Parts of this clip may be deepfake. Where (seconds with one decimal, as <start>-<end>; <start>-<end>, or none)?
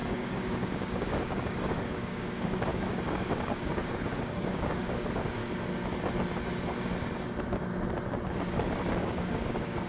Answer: 0.0-5.4; 9.0-9.9